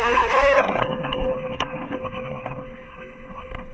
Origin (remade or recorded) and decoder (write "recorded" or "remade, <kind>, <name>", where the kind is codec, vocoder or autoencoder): remade, codec, SNAC